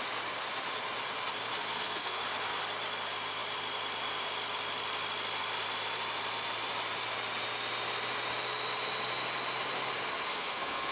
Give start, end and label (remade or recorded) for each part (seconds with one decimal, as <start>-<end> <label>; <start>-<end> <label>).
0.0-1.5 recorded; 1.5-2.2 remade; 2.2-10.3 recorded; 10.3-10.9 remade